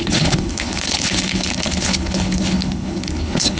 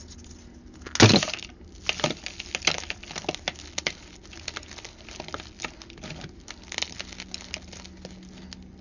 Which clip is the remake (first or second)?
first